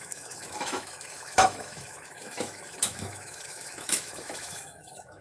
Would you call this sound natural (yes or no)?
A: no